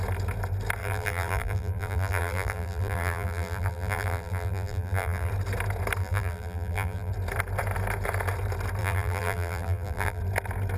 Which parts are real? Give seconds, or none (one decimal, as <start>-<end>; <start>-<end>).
0.0-0.8; 5.3-6.0; 7.1-8.8; 10.2-10.8